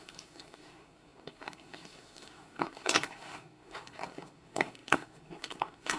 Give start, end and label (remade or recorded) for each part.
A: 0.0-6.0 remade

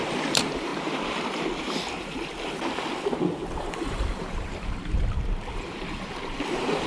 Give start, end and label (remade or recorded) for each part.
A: 0.0-2.3 remade; 2.3-3.6 recorded; 3.6-6.9 remade